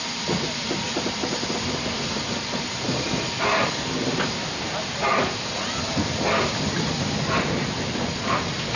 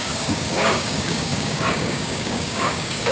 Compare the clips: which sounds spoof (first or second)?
second